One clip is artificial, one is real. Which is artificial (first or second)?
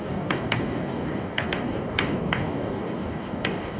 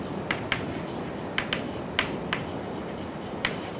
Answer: first